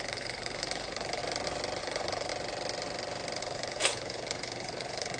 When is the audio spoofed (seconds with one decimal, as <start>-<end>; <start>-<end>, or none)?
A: 0.0-1.2; 1.8-2.3; 3.4-5.2